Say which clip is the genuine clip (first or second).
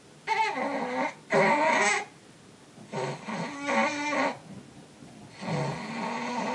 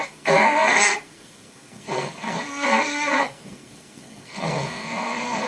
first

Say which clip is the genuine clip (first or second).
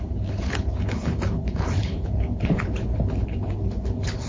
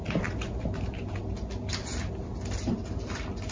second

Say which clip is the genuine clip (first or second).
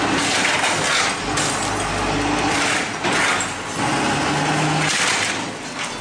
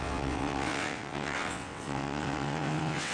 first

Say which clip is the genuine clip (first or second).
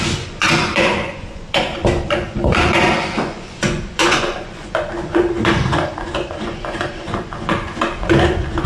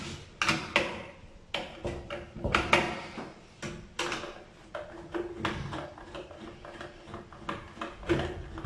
second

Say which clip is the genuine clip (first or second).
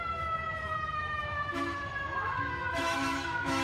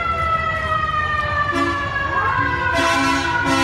second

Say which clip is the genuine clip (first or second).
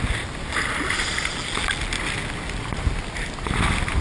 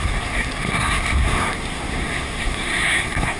first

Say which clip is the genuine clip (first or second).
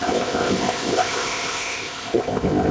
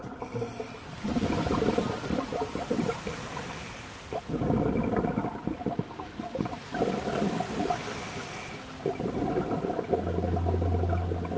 second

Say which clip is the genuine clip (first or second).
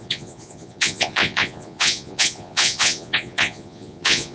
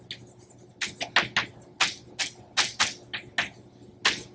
second